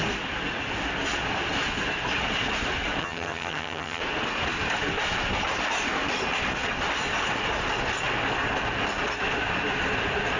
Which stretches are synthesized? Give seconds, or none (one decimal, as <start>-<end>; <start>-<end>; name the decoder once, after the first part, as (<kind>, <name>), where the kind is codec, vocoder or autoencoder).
3.0-4.0 (vocoder, HiFi-GAN)